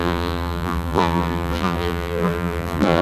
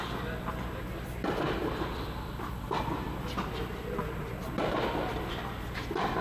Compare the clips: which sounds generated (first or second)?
first